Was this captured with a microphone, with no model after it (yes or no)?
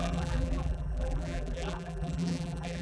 no